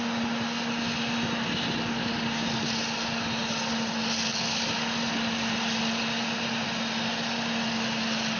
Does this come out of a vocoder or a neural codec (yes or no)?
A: no